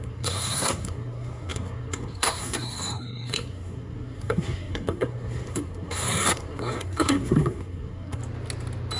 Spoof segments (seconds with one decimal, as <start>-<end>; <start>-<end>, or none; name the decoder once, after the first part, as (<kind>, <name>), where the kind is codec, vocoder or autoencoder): 0.0-8.2 (codec, SNAC)